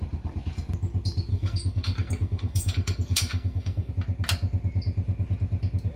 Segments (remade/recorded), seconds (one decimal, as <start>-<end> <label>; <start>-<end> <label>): 0.0-1.3 recorded; 1.3-3.9 remade; 3.9-6.0 recorded